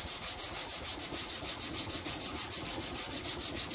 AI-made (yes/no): yes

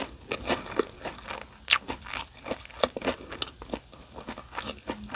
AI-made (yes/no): no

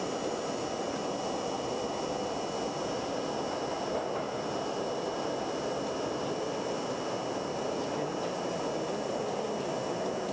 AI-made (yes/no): no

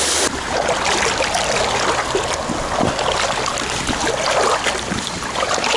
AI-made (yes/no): no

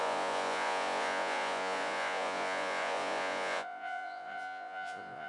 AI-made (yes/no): yes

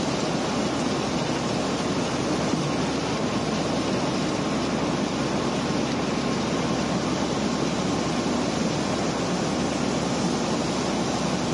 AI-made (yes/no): no